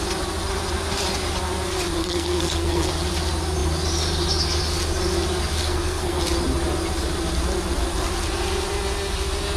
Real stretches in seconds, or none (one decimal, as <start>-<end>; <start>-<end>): 0.0-2.0; 2.9-5.6; 6.2-9.6